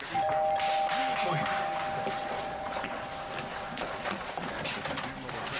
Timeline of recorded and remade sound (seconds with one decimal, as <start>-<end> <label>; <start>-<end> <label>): 0.0-2.2 recorded; 2.2-3.1 remade; 3.1-3.5 recorded; 3.5-4.6 remade; 4.6-5.6 recorded